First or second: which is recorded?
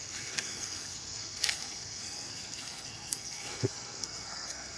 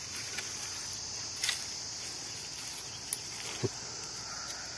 second